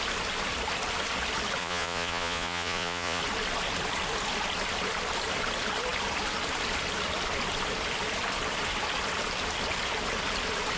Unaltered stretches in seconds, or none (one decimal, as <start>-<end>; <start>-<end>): 0.0-1.6; 3.2-10.8